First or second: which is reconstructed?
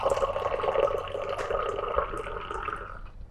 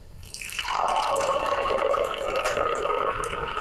second